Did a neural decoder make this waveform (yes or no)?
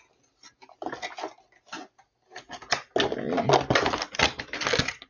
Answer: no